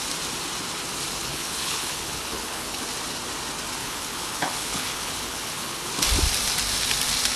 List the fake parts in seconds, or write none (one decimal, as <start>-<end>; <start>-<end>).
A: 1.2-2.8; 3.8-5.9